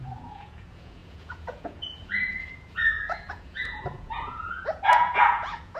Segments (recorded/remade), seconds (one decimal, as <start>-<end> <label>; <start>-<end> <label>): 0.0-5.8 remade